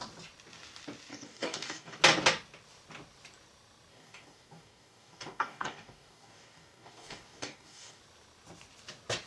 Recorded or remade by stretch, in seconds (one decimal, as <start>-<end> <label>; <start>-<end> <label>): 0.0-1.1 recorded; 1.1-2.0 remade; 2.0-3.9 recorded; 3.9-8.0 remade; 8.0-9.3 recorded